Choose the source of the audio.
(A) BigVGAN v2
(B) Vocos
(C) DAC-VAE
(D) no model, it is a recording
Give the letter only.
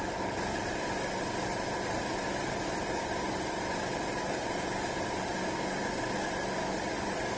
D